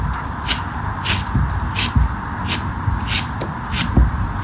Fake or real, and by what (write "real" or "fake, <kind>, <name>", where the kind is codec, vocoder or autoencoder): real